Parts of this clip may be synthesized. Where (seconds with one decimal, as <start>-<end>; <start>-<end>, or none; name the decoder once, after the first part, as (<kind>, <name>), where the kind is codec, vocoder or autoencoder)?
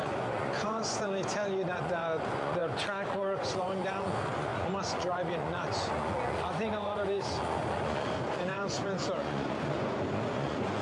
0.0-10.8 (vocoder, Vocos)